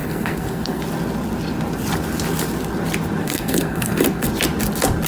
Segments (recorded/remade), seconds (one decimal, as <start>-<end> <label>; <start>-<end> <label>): 0.0-0.8 remade; 0.8-3.2 recorded; 3.2-4.3 remade; 4.3-5.1 recorded